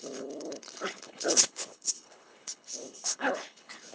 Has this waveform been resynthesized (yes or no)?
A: yes